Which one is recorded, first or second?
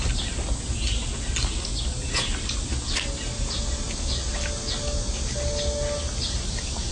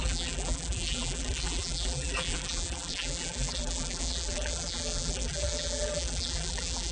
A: first